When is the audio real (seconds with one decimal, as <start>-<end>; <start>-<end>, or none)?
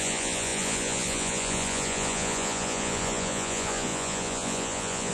none